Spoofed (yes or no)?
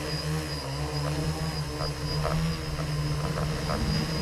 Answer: no